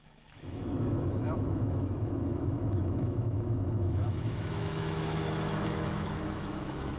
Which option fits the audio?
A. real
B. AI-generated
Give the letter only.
B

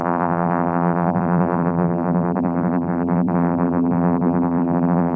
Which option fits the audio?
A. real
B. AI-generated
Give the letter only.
B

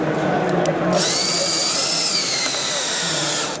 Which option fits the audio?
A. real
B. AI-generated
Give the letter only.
A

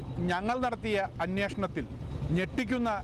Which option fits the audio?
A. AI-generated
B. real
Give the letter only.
B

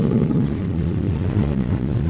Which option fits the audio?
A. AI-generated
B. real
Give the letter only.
A